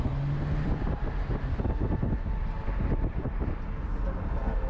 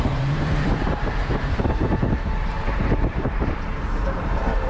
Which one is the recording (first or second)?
first